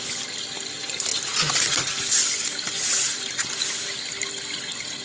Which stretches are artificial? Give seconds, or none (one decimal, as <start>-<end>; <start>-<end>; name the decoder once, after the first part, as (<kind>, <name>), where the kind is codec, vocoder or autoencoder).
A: none